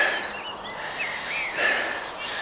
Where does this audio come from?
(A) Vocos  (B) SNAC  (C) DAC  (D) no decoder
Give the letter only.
D